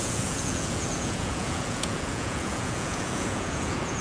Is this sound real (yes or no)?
no